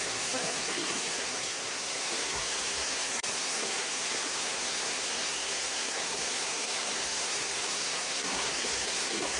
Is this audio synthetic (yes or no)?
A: yes